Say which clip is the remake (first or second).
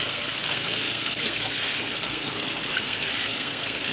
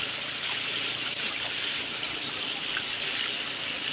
first